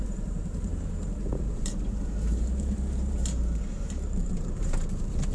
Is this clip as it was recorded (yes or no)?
no